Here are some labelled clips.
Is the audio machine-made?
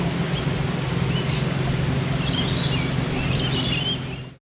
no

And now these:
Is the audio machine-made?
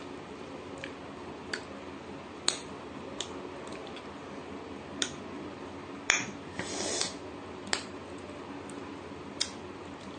no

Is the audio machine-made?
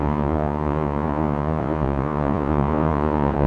yes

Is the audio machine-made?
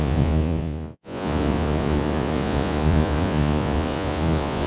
yes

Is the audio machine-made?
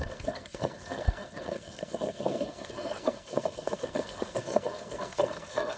yes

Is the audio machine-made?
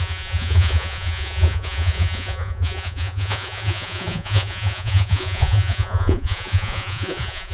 yes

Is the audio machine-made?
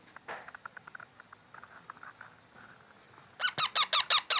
no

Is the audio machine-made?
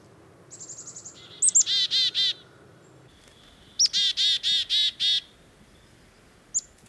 no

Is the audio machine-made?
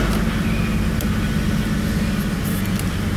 no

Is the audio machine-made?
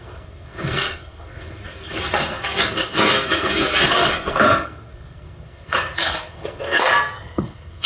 yes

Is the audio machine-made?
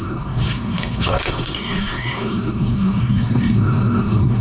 yes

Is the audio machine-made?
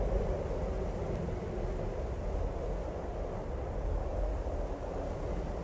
no